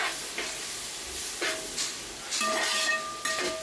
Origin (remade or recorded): recorded